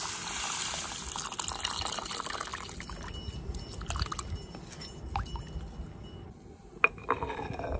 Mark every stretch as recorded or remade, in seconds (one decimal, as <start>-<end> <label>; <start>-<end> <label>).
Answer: 0.0-7.8 recorded